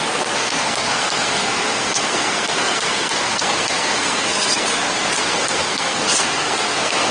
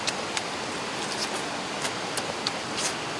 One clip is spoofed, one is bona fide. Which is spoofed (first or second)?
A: first